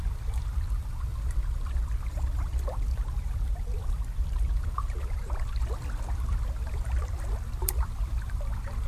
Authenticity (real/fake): fake